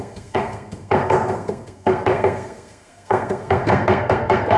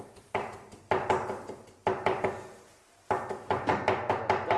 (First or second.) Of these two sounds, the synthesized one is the first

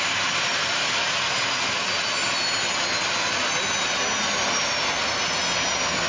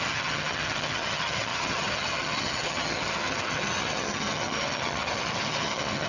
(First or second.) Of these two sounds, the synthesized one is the second